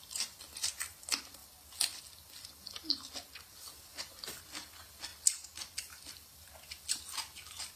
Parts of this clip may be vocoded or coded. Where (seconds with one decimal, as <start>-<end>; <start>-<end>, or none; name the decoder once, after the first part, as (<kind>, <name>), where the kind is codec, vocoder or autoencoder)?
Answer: none

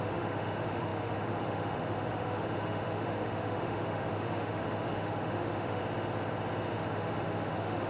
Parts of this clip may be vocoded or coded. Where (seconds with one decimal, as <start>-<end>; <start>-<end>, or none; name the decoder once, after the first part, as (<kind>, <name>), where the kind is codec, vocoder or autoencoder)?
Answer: 0.0-5.8 (autoencoder, DAC-VAE); 6.7-7.9

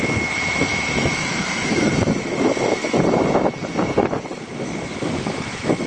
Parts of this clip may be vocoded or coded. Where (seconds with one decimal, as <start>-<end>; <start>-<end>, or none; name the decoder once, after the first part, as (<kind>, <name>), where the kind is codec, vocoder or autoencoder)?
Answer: 0.0-2.8 (autoencoder, DAC-VAE); 4.6-5.9

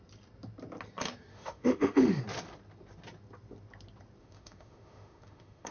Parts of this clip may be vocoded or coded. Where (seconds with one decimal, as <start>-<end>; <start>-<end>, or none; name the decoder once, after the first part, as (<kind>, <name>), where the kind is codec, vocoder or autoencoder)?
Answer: 1.3-2.2 (autoencoder, DAC-VAE); 4.2-5.7

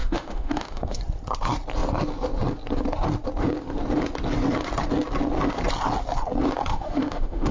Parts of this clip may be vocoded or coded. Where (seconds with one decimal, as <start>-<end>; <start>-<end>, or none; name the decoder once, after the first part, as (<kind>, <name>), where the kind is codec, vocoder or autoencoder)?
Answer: 0.0-1.0 (autoencoder, DAC-VAE); 6.7-7.5

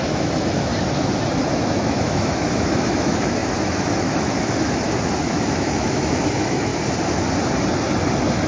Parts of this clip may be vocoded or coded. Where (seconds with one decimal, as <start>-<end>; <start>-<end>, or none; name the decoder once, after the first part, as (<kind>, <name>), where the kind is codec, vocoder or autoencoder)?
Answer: 0.0-0.7 (autoencoder, DAC-VAE); 1.6-6.7

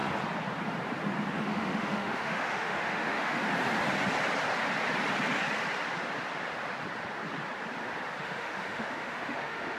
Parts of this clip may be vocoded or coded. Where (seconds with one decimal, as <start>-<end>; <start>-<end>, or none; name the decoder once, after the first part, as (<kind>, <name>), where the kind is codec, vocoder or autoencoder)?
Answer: 1.3-3.4 (autoencoder, DAC-VAE); 8.2-9.8

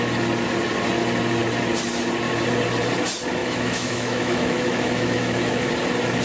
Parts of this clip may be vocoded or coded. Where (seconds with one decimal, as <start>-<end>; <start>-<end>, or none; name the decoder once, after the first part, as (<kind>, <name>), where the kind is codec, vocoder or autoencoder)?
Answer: 3.4-5.7 (autoencoder, DAC-VAE)